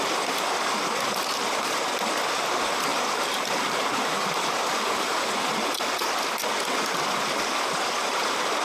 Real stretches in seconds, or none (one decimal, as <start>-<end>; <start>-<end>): 0.0-2.9; 5.7-8.6